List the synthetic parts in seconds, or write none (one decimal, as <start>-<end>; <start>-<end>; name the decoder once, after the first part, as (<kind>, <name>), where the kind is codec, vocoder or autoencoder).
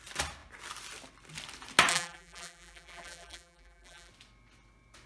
1.9-4.1 (vocoder, BigVGAN v2)